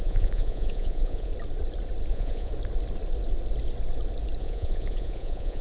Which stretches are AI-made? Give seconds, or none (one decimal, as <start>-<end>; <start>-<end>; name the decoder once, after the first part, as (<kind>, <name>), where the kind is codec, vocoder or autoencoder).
0.0-1.3 (vocoder, Vocos); 2.1-2.5; 4.4-5.6